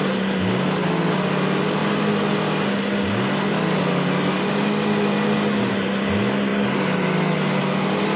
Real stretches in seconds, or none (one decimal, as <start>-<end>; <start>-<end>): 0.0-8.2